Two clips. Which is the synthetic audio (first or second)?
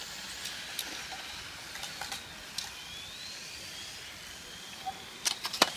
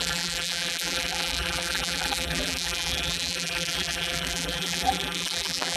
second